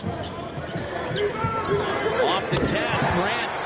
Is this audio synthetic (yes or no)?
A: no